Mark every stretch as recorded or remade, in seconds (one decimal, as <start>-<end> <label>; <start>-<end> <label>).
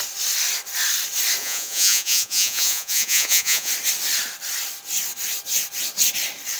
0.0-1.4 recorded; 1.4-3.7 remade; 3.7-6.6 recorded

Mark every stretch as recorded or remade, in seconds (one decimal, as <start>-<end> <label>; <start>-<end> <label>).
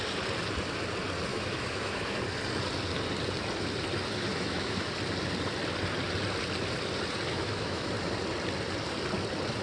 0.0-1.3 recorded; 1.3-2.2 remade; 2.2-4.3 recorded; 4.3-4.9 remade; 4.9-7.3 recorded; 7.3-7.9 remade; 7.9-9.6 recorded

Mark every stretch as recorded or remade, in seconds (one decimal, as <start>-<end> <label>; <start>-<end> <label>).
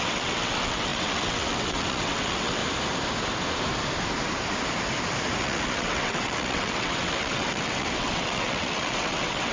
0.0-2.6 remade; 2.6-5.4 recorded; 5.4-9.5 remade